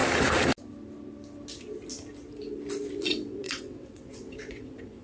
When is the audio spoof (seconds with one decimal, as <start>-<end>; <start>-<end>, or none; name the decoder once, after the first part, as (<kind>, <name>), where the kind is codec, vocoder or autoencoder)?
3.0-5.0 (vocoder, WaveNeXt)